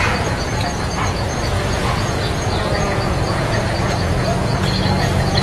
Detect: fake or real fake